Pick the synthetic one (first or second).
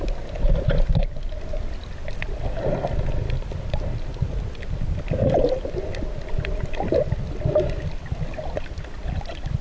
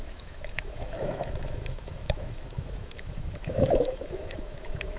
second